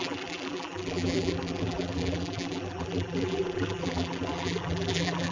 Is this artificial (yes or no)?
yes